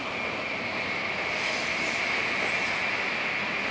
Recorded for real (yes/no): yes